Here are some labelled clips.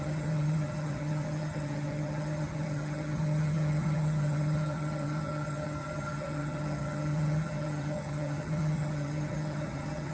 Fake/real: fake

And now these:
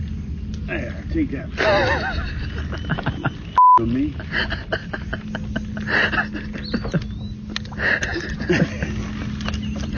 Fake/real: real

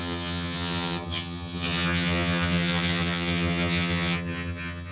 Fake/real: fake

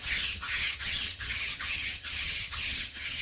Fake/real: fake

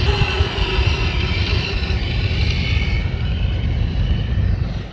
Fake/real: real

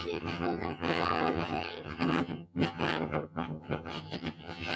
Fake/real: fake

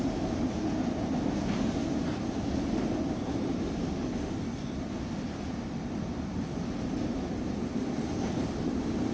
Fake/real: real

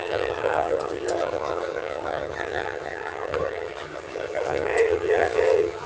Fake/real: fake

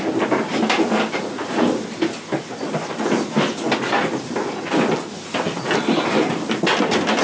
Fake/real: real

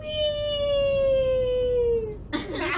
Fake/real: real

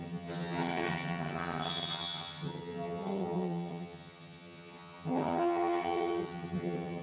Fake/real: fake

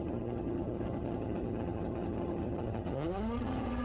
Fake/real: fake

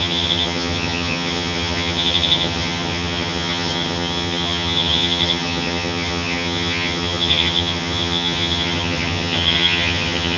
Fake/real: fake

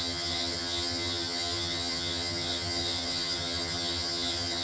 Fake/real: fake